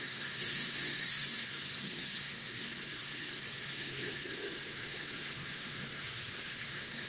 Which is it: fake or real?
fake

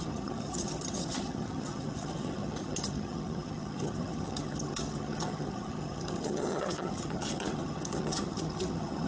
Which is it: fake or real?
fake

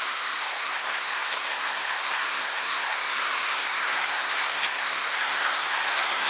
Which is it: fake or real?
fake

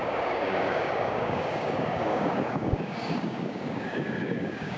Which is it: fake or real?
fake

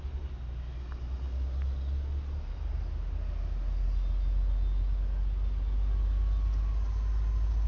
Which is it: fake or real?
real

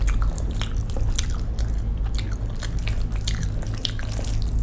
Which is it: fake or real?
real